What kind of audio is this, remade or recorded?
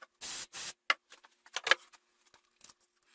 recorded